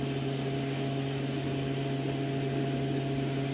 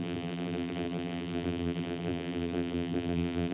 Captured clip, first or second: first